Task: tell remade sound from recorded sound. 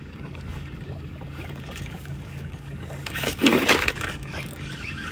remade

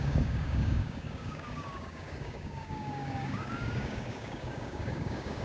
remade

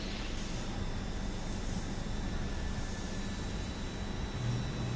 recorded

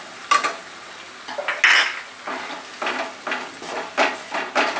recorded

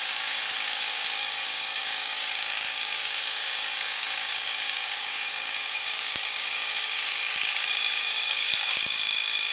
remade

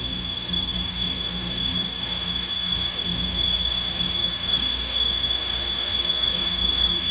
remade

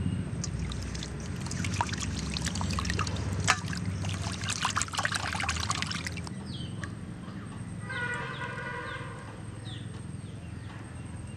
recorded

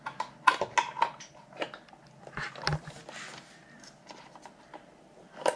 recorded